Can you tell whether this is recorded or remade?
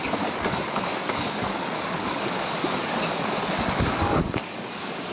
remade